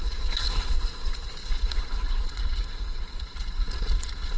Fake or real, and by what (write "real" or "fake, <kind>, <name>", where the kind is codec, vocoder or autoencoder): fake, vocoder, Vocos